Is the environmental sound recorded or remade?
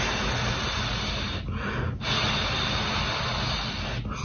recorded